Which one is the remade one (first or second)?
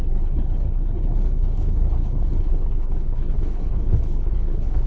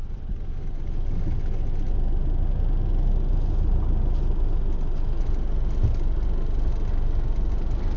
first